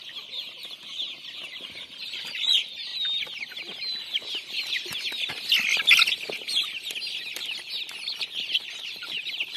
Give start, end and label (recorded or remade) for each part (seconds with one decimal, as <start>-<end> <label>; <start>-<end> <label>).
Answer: 0.0-1.4 recorded; 1.4-2.9 remade; 2.9-8.2 recorded; 8.2-9.6 remade